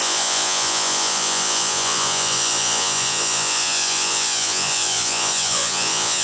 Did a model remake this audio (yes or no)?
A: yes